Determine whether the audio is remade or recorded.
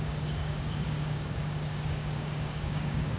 remade